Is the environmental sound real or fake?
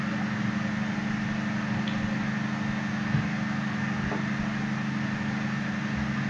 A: real